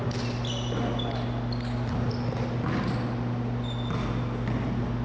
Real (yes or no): yes